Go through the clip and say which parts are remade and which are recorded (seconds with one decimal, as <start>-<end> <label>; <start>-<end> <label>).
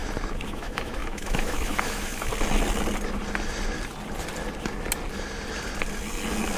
0.0-0.5 recorded; 0.5-2.3 remade; 2.3-6.6 recorded